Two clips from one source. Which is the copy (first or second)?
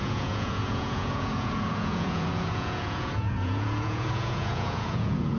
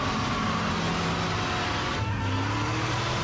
first